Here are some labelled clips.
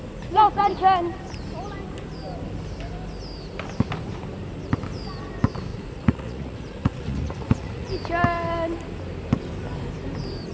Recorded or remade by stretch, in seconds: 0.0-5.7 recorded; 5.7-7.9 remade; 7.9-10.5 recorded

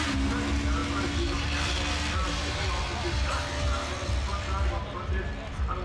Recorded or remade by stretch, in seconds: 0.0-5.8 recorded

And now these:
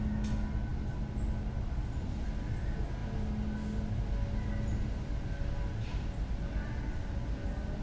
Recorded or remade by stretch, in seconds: 0.0-7.8 recorded

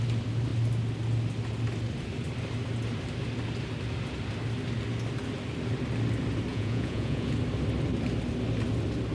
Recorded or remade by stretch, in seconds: 0.0-6.5 recorded; 6.5-7.3 remade; 7.3-9.1 recorded

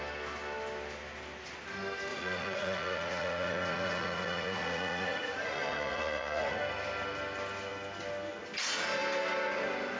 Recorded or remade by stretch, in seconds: 0.0-2.1 recorded; 2.1-6.6 remade; 6.6-10.0 recorded

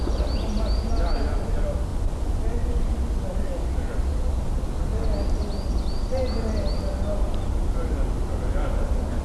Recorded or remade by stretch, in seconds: 0.0-1.9 recorded; 1.9-2.4 remade; 2.4-9.2 recorded